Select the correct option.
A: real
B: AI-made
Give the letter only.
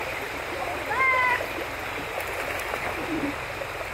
A